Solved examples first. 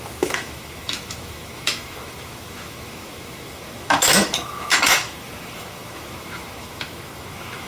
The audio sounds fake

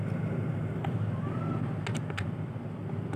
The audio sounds real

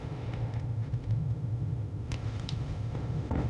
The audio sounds fake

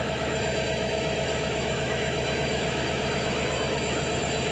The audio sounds fake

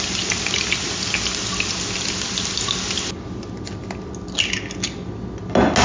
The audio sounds real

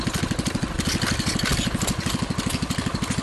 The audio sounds real